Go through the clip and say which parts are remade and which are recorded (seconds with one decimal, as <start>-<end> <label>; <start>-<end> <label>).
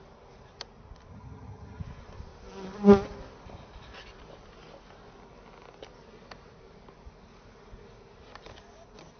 0.0-1.1 recorded; 1.1-1.8 remade; 1.8-9.2 recorded